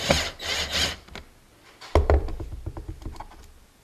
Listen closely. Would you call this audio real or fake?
real